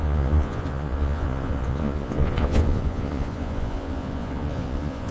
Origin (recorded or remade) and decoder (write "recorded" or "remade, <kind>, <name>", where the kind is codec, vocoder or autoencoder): remade, vocoder, Vocos